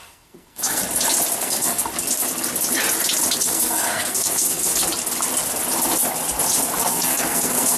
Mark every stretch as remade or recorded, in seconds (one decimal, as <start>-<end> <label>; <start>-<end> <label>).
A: 0.0-0.8 remade; 0.8-1.4 recorded; 1.4-1.8 remade; 1.8-3.4 recorded; 3.4-4.7 remade; 4.7-6.8 recorded; 6.8-7.8 remade